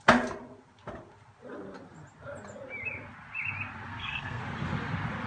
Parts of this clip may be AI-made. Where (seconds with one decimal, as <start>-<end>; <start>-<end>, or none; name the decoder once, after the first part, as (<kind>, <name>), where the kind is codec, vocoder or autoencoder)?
3.9-4.4 (codec, SNAC)